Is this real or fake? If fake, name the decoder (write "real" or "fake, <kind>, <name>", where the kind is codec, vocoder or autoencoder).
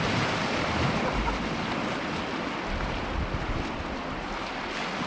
real